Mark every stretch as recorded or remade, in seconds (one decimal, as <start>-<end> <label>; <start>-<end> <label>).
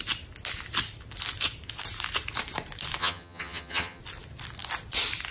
0.0-3.0 recorded; 3.0-4.0 remade; 4.0-5.3 recorded